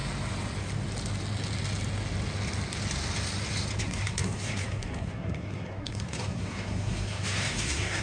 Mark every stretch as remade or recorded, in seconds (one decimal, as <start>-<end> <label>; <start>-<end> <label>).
0.0-3.8 recorded; 3.8-8.0 remade